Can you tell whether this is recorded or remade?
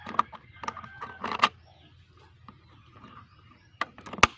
recorded